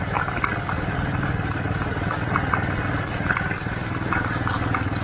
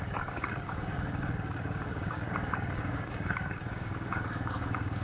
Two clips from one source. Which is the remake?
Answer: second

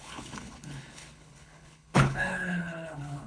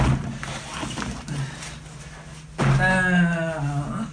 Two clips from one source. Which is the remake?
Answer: first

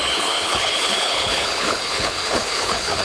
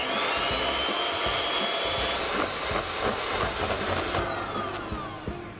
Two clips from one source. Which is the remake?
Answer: first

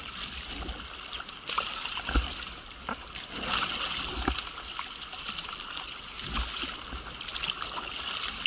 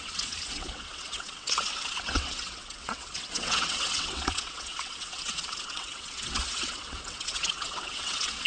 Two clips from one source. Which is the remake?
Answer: second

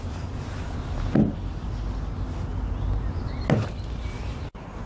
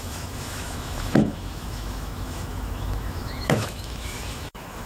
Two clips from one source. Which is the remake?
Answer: second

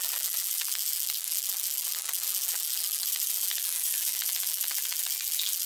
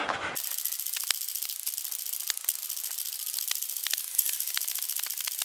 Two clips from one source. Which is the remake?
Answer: first